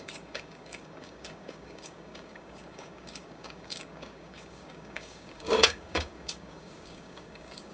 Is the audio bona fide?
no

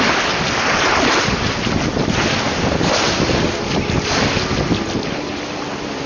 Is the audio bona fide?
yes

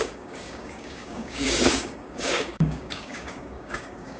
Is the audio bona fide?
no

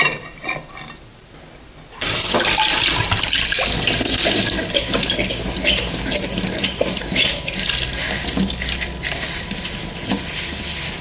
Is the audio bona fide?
yes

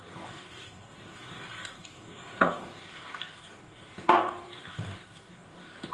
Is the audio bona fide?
no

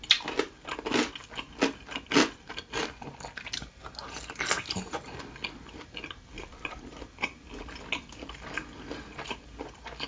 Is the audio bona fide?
yes